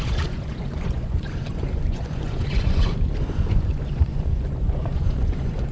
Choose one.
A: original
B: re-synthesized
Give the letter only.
B